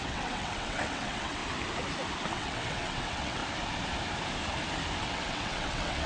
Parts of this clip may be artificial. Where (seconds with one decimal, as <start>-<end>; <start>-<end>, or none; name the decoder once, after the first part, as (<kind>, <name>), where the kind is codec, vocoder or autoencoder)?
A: 0.0-1.4 (vocoder, WaveNeXt); 2.3-3.4; 5.0-6.1